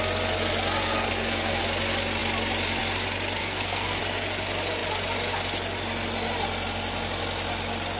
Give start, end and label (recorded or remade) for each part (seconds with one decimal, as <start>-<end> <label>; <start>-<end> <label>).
0.0-0.8 recorded; 0.8-1.6 remade; 1.6-3.4 recorded; 3.4-4.0 remade; 4.0-8.0 recorded